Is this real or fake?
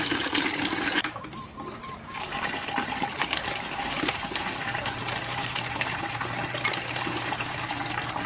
fake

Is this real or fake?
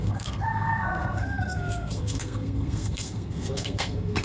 fake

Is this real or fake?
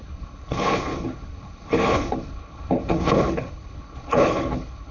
fake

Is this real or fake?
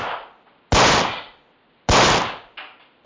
real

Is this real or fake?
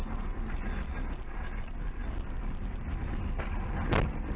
real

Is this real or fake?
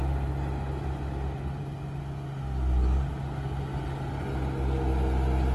real